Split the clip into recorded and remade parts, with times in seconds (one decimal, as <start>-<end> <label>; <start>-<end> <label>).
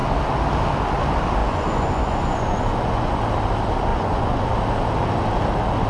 0.0-1.4 recorded; 1.4-3.2 remade; 3.2-3.9 recorded; 3.9-4.5 remade; 4.5-5.9 recorded